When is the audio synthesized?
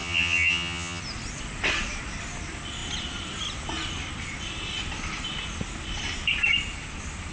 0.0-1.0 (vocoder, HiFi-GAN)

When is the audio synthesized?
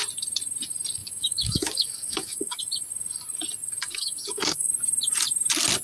1.0-2.6 (codec, DAC); 3.8-4.7